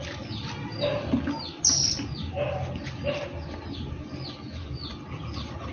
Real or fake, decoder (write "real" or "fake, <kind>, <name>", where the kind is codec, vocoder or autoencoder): real